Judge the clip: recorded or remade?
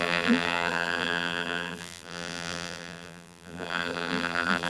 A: remade